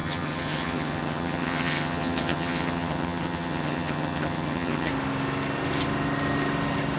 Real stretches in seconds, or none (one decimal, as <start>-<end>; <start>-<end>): 4.9-7.0